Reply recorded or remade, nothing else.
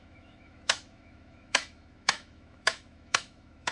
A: remade